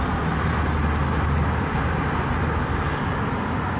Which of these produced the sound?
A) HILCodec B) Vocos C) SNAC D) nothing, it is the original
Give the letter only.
D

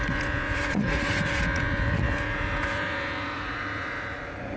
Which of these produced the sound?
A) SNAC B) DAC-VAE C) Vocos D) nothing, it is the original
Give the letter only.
C